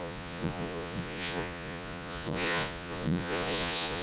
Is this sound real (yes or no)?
no